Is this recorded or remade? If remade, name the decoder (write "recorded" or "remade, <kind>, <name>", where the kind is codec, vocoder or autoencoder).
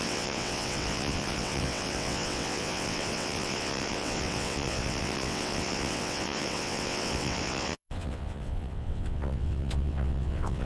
remade, vocoder, WaveNeXt